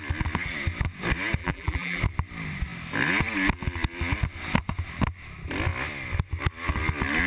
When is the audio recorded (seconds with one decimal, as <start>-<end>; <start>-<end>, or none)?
0.0-1.4; 2.0-7.3